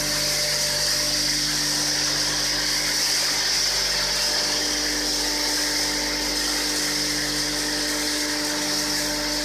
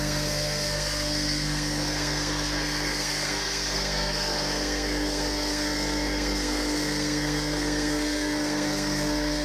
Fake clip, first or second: second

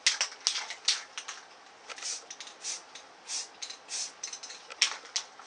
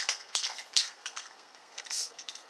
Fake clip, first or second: second